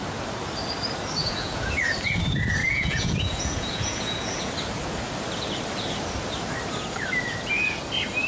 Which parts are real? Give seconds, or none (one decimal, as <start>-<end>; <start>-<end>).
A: 0.0-1.2; 1.7-2.6; 4.5-8.3